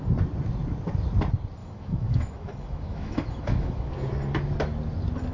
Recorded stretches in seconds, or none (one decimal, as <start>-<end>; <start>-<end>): 0.0-1.6; 3.9-5.3